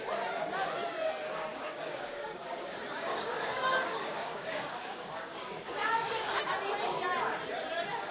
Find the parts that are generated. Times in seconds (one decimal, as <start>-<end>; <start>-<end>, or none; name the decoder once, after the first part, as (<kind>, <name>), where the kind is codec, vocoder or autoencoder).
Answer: 1.5-6.4 (codec, DAC)